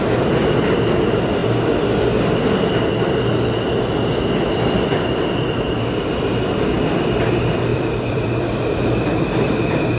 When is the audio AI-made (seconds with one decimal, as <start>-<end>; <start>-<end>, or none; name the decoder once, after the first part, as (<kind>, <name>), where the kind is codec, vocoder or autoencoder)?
7.7-9.1 (vocoder, BigVGAN v2)

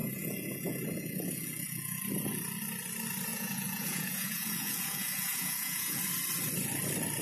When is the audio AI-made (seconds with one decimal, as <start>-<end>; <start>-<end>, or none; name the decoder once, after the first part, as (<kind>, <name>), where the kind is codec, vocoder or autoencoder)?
0.0-2.0 (vocoder, Vocos); 3.3-6.0

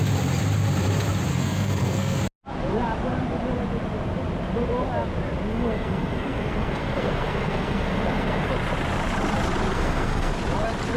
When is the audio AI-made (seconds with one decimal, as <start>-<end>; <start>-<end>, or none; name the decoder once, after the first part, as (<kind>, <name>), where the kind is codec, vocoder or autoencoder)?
1.3-2.2 (codec, SNAC); 5.5-8.5; 9.7-10.3

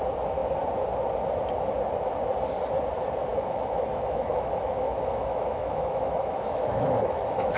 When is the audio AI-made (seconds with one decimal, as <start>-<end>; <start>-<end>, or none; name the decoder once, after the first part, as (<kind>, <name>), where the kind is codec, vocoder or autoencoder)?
3.3-7.6 (autoencoder, DAC-VAE)

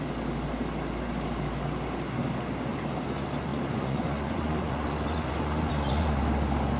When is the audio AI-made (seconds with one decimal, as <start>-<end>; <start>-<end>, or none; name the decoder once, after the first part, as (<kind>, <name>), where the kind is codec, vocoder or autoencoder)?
3.5-6.2 (vocoder, Vocos)

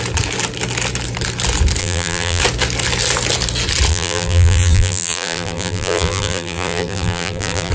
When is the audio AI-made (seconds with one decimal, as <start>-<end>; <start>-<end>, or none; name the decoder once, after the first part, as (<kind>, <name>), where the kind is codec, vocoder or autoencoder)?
1.8-2.4 (vocoder, BigVGAN v2); 3.9-7.7

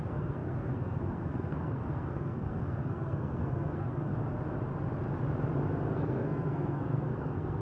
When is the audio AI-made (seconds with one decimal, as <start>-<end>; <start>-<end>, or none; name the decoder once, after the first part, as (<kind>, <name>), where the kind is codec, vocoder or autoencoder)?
0.0-4.1 (codec, SNAC); 5.9-7.6

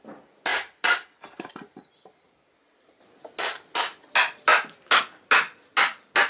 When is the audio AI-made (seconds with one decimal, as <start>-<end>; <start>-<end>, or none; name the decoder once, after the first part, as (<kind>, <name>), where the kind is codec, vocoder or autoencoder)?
none